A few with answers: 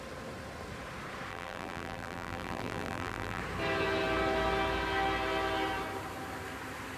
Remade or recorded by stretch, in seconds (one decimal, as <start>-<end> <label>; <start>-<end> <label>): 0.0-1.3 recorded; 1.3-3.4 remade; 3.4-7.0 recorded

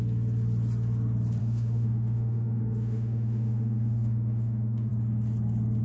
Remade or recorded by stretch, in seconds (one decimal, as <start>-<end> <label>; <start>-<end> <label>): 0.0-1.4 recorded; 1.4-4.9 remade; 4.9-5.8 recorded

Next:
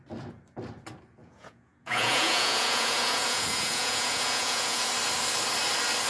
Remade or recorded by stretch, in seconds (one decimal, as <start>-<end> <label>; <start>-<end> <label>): 0.0-1.2 recorded; 1.2-4.9 remade; 4.9-6.1 recorded

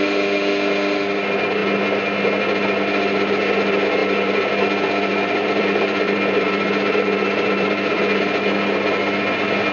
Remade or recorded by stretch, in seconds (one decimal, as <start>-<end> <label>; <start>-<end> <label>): 0.0-4.0 recorded; 4.0-4.5 remade; 4.5-5.1 recorded; 5.1-8.0 remade; 8.0-9.7 recorded

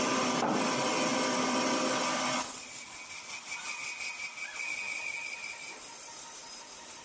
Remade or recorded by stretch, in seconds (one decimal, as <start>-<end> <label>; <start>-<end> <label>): 0.0-7.0 recorded

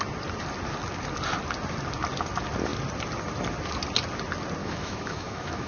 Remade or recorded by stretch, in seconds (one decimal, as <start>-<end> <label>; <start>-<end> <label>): 0.0-4.6 recorded; 4.6-5.7 remade

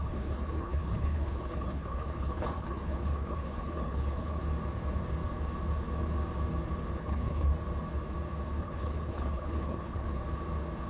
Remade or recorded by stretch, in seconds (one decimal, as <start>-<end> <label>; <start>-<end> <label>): 0.0-4.4 remade; 4.4-7.0 recorded; 7.0-7.5 remade; 7.5-8.6 recorded; 8.6-10.2 remade; 10.2-10.9 recorded